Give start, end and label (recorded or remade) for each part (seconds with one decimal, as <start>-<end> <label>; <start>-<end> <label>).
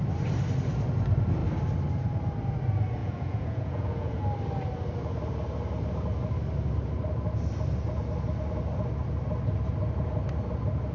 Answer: 0.0-3.0 recorded; 3.0-4.2 remade; 4.2-10.9 recorded